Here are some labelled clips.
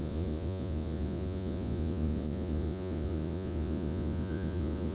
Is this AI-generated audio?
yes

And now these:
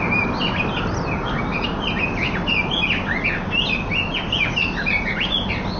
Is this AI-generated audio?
no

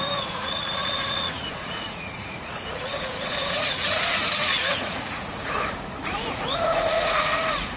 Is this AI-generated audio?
yes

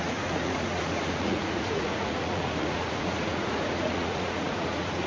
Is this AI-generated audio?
yes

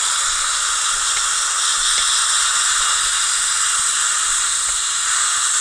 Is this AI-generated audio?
no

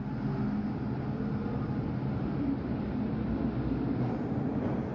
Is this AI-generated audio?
no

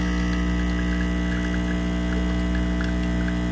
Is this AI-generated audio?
no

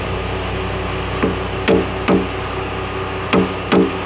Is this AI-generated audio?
no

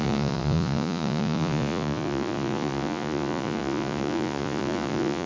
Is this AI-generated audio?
yes